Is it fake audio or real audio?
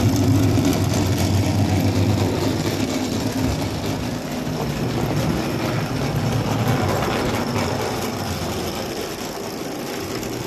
real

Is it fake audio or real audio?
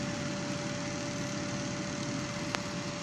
real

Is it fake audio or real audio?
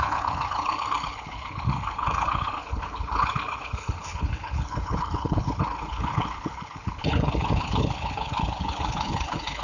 fake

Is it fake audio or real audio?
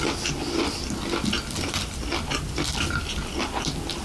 real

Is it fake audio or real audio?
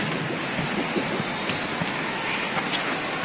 real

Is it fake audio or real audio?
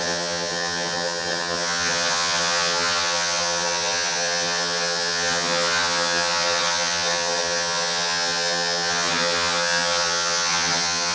fake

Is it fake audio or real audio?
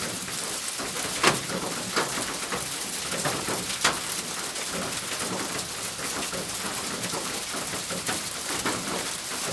real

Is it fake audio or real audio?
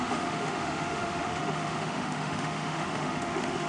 fake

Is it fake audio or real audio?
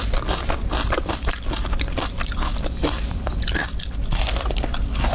fake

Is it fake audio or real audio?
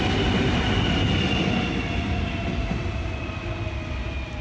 real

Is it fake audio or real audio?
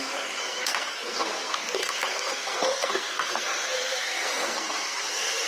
fake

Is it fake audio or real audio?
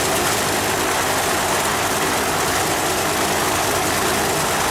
real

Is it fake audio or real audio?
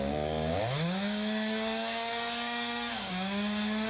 fake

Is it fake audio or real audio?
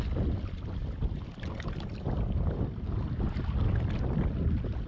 real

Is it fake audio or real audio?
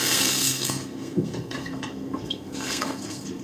fake